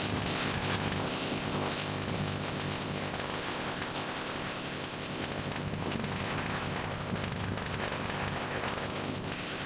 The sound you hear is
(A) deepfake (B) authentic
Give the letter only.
A